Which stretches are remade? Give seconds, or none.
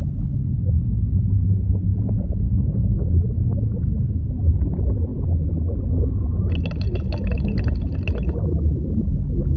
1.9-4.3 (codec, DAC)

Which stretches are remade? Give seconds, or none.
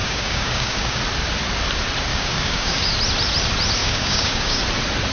0.0-1.0 (codec, DAC); 2.1-2.9; 3.8-4.6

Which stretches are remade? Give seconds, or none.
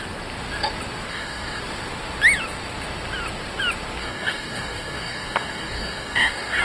1.1-1.6 (codec, DAC); 4.0-6.6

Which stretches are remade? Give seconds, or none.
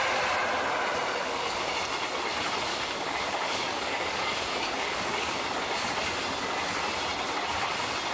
1.2-1.7 (codec, DAC); 2.7-5.4